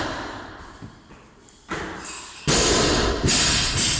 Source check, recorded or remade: recorded